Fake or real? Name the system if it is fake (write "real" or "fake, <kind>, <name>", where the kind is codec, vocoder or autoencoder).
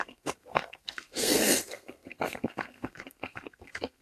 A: fake, codec, SNAC